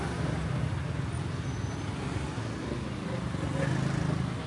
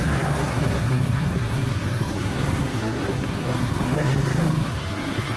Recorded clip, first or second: first